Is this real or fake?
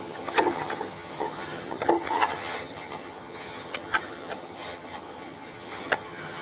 fake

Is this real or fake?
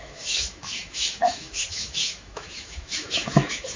fake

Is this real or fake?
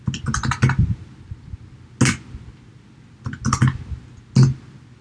real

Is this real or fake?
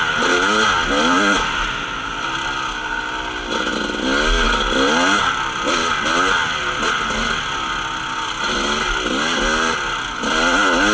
real